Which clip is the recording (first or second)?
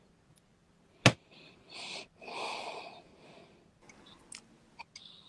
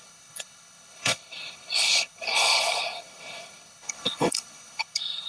first